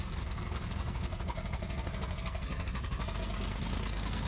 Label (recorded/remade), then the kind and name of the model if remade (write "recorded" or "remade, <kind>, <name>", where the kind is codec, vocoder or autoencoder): remade, codec, SNAC